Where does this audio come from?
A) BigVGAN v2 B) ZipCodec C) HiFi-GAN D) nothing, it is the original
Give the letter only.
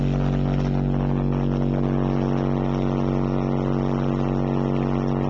D